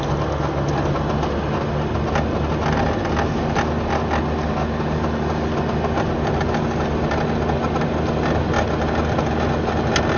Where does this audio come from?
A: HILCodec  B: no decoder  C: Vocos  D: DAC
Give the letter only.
B